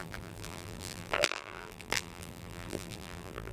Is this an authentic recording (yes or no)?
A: no